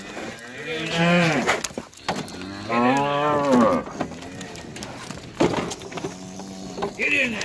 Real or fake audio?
real